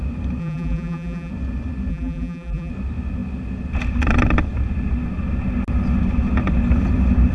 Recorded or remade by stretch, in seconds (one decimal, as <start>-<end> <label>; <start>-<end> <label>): 0.0-0.4 recorded; 0.4-1.3 remade; 1.3-1.9 recorded; 1.9-2.7 remade; 2.7-7.3 recorded